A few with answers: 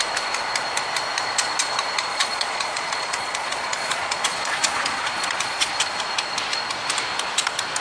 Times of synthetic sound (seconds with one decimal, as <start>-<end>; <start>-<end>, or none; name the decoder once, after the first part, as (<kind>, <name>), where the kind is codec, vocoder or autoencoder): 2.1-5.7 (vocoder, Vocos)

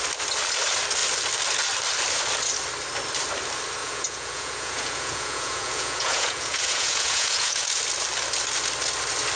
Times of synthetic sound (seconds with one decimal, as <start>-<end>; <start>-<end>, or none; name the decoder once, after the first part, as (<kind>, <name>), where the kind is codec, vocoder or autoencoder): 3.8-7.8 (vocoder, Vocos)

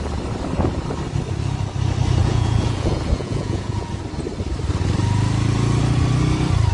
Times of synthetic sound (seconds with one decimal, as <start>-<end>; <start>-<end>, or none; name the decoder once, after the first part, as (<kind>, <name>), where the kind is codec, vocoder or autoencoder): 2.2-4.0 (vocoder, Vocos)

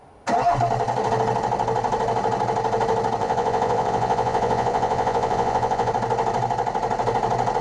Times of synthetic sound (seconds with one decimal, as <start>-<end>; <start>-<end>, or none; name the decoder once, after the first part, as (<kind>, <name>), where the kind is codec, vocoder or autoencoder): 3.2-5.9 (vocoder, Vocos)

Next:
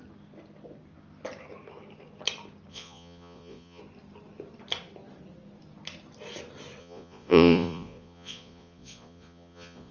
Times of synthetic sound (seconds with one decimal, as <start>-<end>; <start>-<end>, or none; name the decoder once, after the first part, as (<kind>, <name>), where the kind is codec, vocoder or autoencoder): 2.7-3.8 (vocoder, Vocos); 6.8-9.9